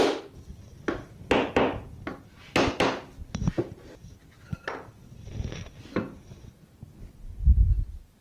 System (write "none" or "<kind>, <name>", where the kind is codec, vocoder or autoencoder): none